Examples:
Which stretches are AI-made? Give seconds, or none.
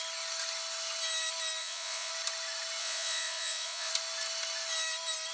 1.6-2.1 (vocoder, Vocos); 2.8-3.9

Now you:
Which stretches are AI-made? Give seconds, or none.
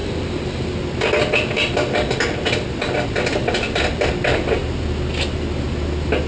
none